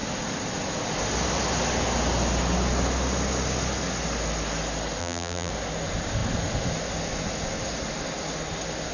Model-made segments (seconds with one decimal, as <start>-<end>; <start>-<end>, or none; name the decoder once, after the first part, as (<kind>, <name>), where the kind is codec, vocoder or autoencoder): 5.0-5.5 (vocoder, BigVGAN v2)